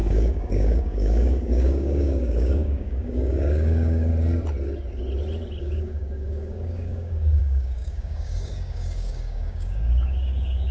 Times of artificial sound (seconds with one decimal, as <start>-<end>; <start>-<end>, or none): 0.0-4.1; 5.6-10.7